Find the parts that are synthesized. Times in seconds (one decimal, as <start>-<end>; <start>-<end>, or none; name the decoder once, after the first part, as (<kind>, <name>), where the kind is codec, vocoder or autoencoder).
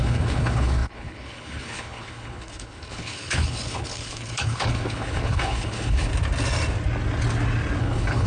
0.0-6.1 (codec, HILCodec); 7.8-8.3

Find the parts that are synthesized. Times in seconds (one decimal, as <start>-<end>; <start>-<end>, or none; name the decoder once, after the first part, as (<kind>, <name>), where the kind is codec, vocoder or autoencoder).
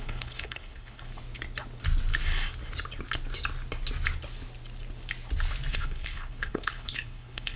0.0-1.1 (codec, HILCodec); 5.7-7.6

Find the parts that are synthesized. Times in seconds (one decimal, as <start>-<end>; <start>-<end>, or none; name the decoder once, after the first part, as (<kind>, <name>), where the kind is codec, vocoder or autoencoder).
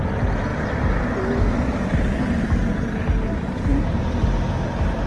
none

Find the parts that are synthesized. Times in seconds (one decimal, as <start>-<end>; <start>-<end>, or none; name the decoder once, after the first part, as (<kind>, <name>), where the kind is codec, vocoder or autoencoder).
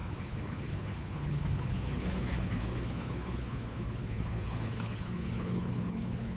0.0-6.4 (codec, HILCodec)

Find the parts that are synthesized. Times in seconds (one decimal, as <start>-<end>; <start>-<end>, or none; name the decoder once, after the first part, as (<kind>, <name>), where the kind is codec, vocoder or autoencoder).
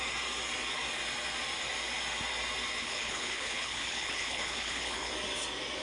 2.8-5.1 (codec, HILCodec)